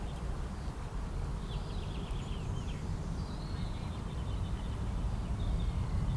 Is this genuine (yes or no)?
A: yes